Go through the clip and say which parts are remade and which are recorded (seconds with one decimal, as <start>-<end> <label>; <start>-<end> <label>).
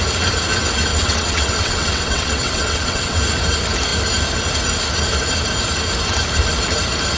0.0-0.9 recorded; 0.9-3.2 remade; 3.2-7.2 recorded